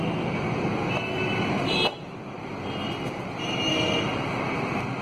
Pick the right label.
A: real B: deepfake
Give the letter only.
A